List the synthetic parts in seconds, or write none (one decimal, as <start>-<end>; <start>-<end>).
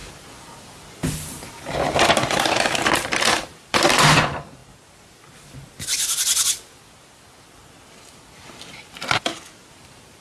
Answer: 2.0-4.6; 9.7-10.2